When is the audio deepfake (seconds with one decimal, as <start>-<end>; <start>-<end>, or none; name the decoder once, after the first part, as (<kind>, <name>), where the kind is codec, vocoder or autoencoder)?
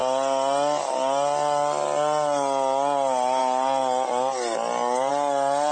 none